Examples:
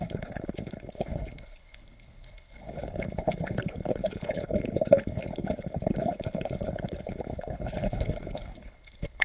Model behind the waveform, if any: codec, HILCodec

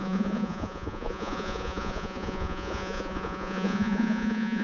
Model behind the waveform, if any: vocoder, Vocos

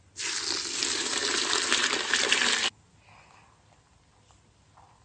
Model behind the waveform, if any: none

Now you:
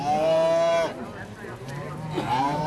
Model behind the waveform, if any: vocoder, BigVGAN v2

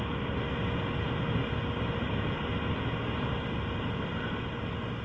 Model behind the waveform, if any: none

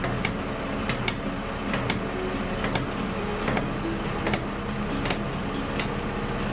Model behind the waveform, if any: none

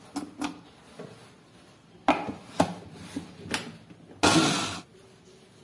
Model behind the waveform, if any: none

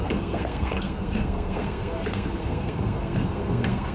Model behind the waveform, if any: codec, SNAC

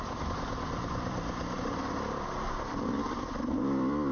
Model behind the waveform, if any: vocoder, BigVGAN v2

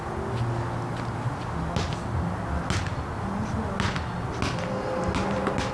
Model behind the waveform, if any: none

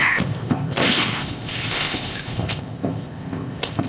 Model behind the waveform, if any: codec, ZipCodec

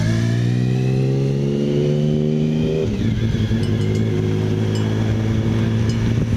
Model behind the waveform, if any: none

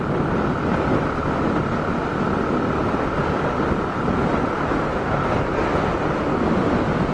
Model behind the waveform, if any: none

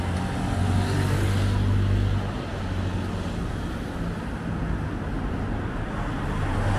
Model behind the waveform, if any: none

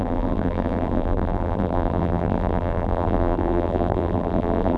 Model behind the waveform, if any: vocoder, BigVGAN v2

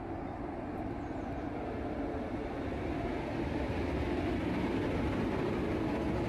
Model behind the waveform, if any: none